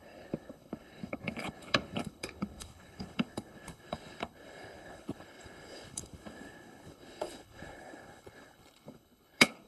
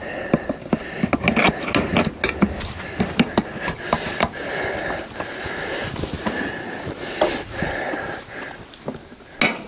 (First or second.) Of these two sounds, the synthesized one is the first